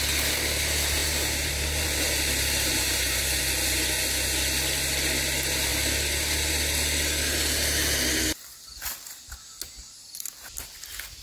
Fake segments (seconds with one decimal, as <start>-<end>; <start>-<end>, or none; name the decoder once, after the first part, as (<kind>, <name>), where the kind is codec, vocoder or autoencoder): 1.0-3.4 (vocoder, BigVGAN v2)